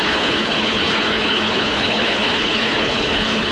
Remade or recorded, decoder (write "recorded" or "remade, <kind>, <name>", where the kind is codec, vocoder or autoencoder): remade, codec, HILCodec